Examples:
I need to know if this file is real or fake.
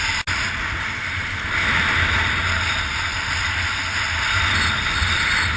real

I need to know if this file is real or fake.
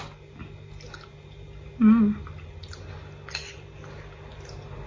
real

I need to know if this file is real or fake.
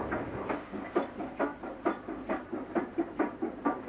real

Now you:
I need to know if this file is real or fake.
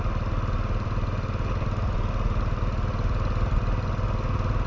real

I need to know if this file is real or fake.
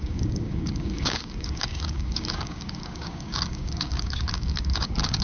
fake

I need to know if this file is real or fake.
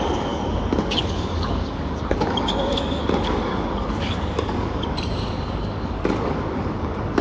fake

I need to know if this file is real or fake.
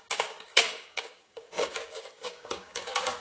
fake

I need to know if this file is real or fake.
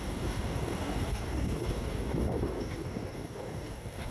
fake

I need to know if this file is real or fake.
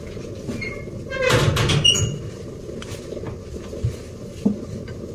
real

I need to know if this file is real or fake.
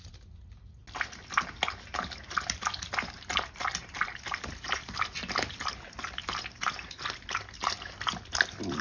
real